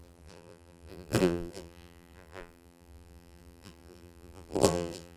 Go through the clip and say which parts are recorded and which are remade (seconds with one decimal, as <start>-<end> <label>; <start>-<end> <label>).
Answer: 0.0-5.2 remade